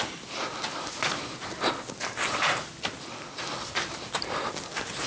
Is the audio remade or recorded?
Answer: recorded